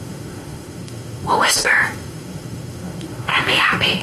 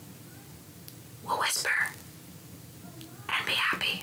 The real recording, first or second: second